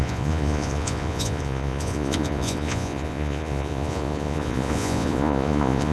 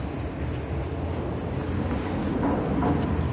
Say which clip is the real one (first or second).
second